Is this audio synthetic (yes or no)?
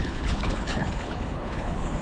yes